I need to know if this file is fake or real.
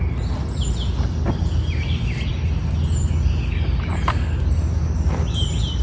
real